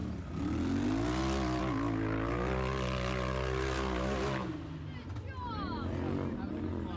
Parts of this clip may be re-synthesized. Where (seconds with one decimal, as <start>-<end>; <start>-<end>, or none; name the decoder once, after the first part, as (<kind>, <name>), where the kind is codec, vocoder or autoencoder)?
none